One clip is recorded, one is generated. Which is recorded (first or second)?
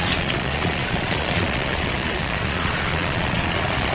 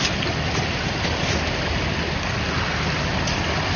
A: second